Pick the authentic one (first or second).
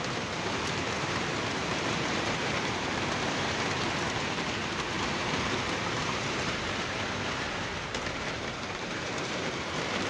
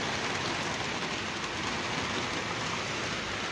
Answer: second